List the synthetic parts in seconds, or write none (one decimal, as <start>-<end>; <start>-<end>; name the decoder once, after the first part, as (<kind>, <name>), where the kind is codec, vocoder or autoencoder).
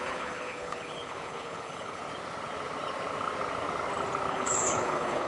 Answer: 0.0-2.0 (codec, HILCodec); 4.3-5.3